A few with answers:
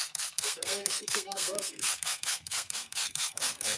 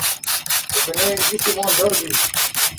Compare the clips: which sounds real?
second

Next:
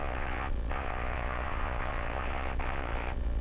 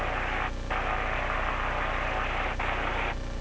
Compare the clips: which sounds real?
second